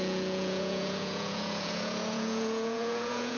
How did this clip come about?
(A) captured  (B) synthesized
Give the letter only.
B